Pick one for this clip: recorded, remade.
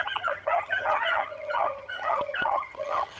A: remade